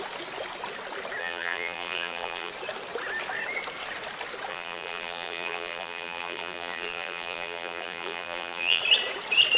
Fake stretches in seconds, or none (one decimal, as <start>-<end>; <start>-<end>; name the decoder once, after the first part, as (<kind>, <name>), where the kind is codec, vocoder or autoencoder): 1.2-2.5 (vocoder, BigVGAN v2); 4.5-8.8